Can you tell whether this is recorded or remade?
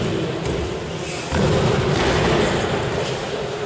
recorded